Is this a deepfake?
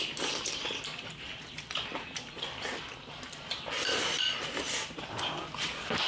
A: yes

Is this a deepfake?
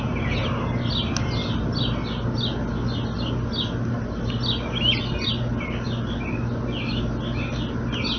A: no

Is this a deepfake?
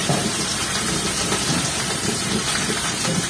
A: yes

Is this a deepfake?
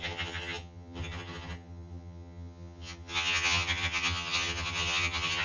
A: yes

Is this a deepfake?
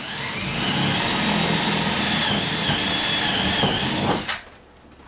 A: no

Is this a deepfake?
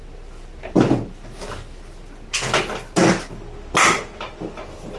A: no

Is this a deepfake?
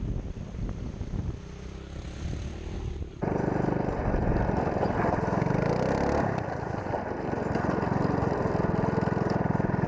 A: no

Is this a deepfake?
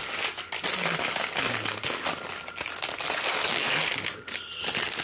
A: no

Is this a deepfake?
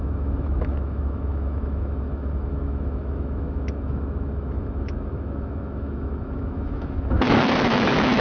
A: yes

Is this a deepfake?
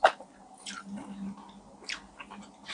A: no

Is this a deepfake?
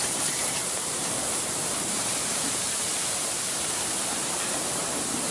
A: yes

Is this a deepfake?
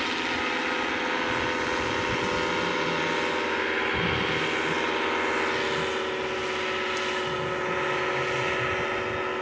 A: no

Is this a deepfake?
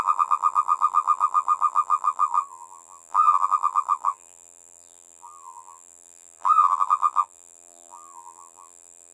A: yes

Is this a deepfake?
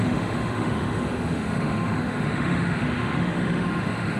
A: yes